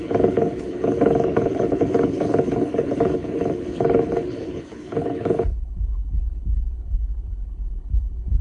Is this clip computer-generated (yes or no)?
yes